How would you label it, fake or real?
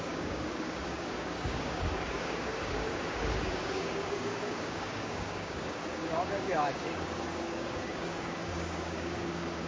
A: fake